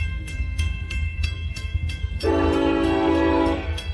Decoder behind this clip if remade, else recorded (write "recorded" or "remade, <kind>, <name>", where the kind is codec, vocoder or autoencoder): remade, codec, SNAC